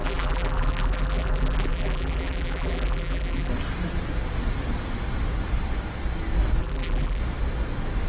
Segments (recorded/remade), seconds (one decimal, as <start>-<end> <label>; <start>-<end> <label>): 0.0-3.5 remade; 3.5-6.6 recorded; 6.6-7.2 remade; 7.2-8.1 recorded